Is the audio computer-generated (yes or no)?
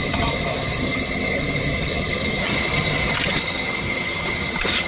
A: yes